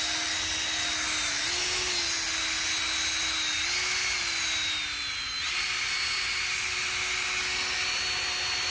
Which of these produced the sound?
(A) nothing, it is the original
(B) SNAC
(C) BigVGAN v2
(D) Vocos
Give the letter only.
A